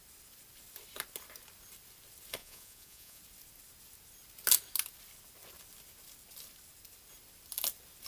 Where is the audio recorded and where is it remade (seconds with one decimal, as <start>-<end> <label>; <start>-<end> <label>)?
0.0-2.4 recorded; 2.4-3.2 remade; 3.2-8.1 recorded